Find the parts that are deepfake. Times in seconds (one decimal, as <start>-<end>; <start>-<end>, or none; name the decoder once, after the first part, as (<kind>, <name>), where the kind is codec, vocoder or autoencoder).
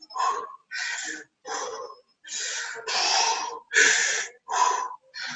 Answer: none